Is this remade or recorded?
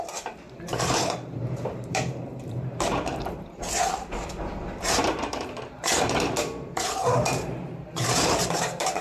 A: remade